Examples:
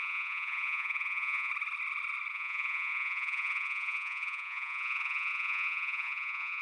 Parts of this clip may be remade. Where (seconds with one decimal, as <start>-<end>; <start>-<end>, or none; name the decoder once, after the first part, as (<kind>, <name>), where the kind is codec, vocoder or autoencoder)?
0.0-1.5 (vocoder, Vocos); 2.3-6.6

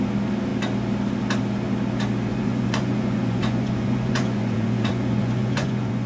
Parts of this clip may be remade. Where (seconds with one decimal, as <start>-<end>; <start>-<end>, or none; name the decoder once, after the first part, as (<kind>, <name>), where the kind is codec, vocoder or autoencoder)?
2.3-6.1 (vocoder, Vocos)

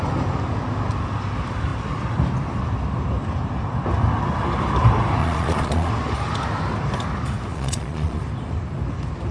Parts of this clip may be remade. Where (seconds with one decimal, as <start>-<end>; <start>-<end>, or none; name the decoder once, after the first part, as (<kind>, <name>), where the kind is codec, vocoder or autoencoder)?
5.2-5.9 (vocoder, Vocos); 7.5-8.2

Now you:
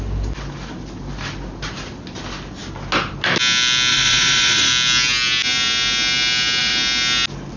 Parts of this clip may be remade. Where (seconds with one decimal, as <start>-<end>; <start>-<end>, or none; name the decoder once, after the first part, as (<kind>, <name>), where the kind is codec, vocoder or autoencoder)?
3.9-4.7 (vocoder, Vocos)

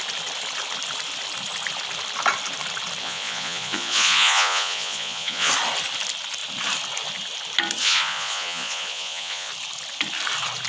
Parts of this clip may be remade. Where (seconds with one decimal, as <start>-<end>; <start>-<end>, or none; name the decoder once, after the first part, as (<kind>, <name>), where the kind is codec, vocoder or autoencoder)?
3.0-5.5 (vocoder, Vocos); 7.8-9.5

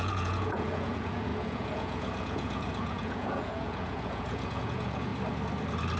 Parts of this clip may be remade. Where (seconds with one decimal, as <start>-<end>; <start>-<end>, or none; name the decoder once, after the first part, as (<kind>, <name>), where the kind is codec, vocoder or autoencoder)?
0.0-5.1 (vocoder, Vocos)